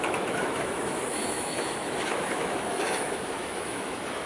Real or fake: fake